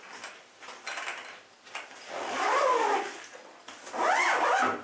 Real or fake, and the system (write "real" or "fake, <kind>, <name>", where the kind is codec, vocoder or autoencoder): real